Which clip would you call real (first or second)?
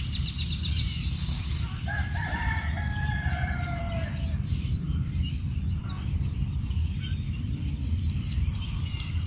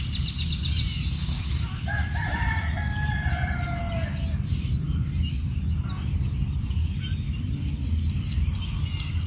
second